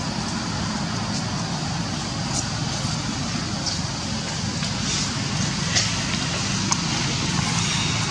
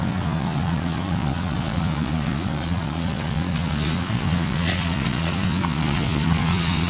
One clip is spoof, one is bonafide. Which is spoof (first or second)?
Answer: second